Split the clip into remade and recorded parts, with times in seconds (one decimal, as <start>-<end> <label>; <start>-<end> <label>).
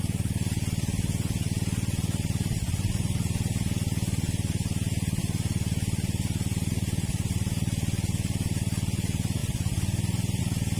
0.0-10.8 recorded